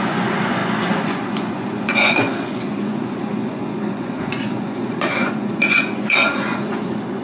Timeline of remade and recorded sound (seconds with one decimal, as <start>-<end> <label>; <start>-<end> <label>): 0.0-7.2 remade